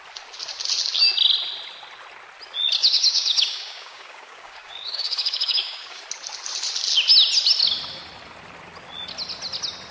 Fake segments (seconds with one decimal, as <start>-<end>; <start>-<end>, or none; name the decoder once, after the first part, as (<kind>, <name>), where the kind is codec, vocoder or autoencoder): 2.8-6.0 (codec, DAC)